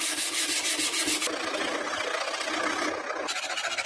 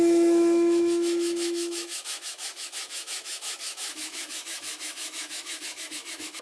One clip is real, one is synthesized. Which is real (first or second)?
first